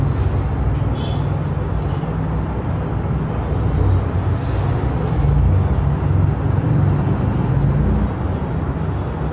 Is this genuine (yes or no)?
yes